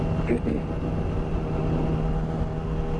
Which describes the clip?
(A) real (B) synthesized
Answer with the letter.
A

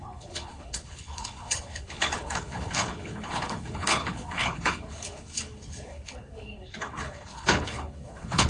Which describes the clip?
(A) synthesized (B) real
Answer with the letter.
A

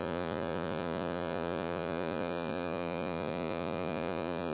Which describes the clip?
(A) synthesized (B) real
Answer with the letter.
A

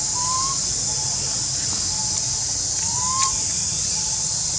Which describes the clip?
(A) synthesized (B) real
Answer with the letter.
B